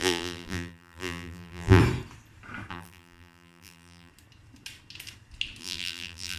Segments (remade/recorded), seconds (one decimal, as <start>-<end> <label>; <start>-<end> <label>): 0.0-1.8 remade; 1.8-2.7 recorded; 2.7-4.1 remade; 4.1-5.6 recorded; 5.6-6.4 remade